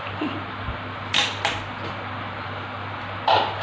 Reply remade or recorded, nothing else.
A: recorded